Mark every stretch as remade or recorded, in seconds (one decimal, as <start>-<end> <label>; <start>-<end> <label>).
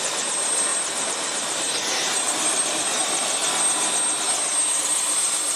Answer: 0.0-3.4 remade; 3.4-4.8 recorded; 4.8-5.6 remade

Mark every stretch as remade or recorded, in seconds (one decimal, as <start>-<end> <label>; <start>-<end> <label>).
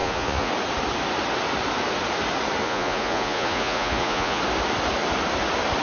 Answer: 0.0-0.5 remade; 0.5-2.6 recorded; 2.6-4.4 remade; 4.4-5.8 recorded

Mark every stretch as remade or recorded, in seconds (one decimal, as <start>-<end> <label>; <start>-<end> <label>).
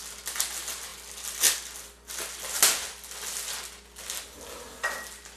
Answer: 0.0-5.4 recorded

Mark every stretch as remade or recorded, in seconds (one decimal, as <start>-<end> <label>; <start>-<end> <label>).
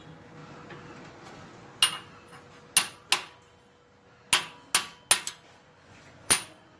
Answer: 0.0-5.6 recorded; 5.6-6.8 remade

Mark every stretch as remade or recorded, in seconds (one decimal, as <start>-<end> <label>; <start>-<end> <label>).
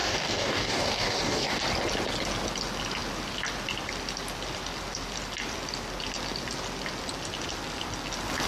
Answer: 0.0-1.6 remade; 1.6-8.5 recorded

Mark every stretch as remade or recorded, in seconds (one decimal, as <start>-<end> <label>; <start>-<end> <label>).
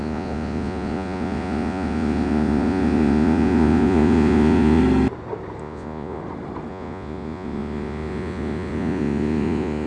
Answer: 0.0-4.8 remade; 4.8-5.6 recorded; 5.6-6.2 remade; 6.2-6.7 recorded; 6.7-9.9 remade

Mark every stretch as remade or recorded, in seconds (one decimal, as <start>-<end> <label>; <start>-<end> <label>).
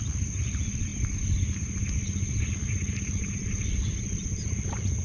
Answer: 0.0-5.0 recorded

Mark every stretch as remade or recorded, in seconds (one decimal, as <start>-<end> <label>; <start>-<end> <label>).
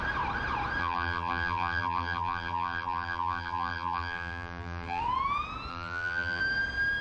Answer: 0.0-0.8 recorded; 0.8-5.0 remade; 5.0-5.7 recorded; 5.7-6.4 remade; 6.4-7.0 recorded